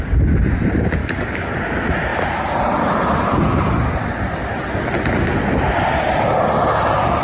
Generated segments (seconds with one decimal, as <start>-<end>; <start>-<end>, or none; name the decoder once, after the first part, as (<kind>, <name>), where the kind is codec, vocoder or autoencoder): 1.0-1.6 (codec, DAC)